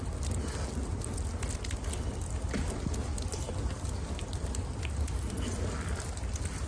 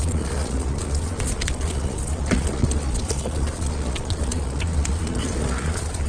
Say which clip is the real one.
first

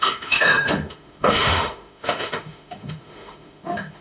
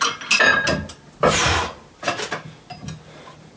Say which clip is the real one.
second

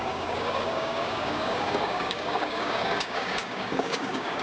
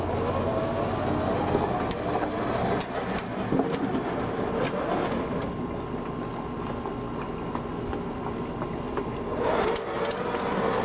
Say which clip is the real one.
second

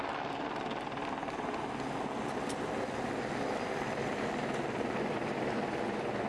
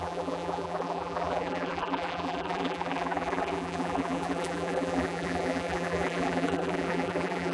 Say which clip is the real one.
first